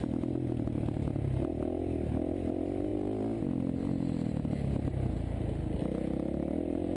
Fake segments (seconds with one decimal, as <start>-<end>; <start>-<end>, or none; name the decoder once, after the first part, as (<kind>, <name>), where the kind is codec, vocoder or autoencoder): none